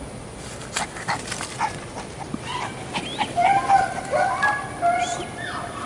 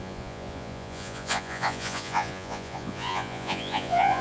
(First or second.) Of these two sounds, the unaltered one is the first